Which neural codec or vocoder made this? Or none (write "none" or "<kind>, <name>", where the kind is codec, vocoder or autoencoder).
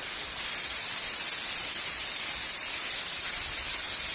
none